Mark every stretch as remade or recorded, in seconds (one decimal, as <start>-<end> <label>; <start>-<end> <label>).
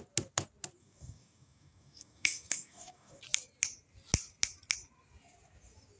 0.0-0.8 recorded; 0.8-3.2 remade; 3.2-6.0 recorded